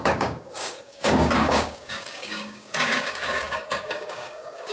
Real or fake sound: fake